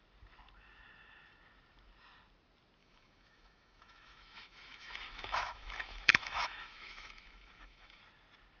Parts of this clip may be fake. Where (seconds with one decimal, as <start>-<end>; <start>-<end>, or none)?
2.8-8.0